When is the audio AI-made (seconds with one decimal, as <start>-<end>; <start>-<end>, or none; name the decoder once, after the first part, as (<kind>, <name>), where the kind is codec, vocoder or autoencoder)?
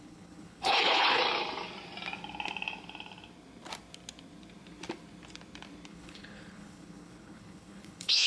0.0-1.2 (codec, HILCodec); 5.9-8.3